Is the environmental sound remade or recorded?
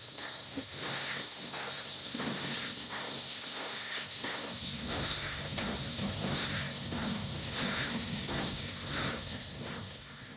remade